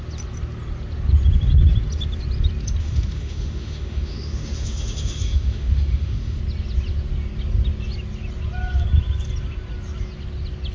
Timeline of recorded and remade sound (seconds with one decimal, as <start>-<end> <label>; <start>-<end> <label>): 0.0-2.8 recorded; 2.8-6.4 remade; 6.4-10.7 recorded